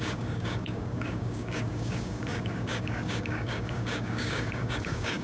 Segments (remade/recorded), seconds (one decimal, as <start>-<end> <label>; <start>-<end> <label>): 0.0-5.2 remade